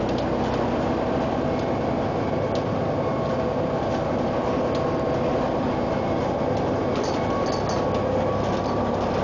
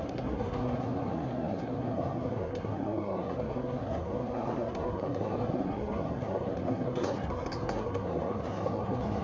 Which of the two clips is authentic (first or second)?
first